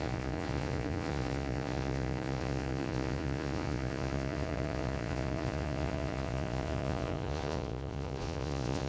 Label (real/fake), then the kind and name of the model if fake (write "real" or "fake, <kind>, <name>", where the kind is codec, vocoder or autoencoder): fake, vocoder, Vocos